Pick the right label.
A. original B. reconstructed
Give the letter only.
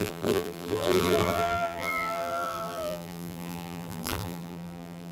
B